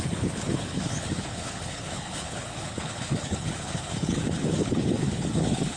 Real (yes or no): no